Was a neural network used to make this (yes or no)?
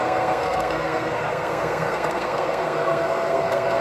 yes